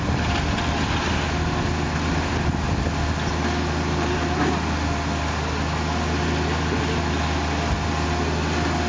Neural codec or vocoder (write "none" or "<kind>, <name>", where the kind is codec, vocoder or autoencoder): none